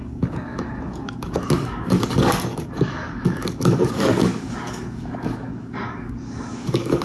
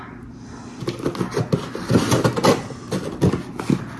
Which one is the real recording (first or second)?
second